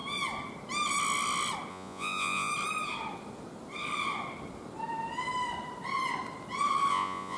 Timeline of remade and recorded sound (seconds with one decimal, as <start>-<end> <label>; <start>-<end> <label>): 0.0-1.7 recorded; 1.7-2.5 remade; 2.5-6.9 recorded; 6.9-7.4 remade